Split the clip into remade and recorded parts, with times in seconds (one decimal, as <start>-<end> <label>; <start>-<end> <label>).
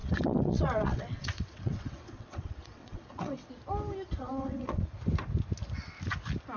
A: 0.0-3.5 remade; 3.5-4.2 recorded; 4.2-4.8 remade; 4.8-6.6 recorded